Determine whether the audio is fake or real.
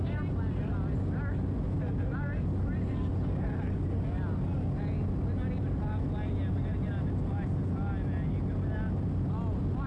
real